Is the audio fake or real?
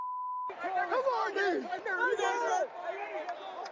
real